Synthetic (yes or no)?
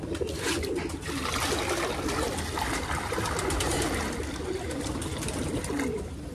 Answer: no